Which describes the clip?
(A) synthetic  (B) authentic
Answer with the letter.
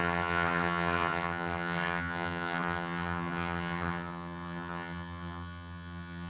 A